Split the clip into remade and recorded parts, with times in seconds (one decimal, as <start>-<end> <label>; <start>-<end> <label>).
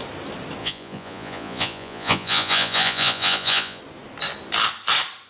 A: 0.0-0.6 recorded; 0.6-3.8 remade; 3.8-5.3 recorded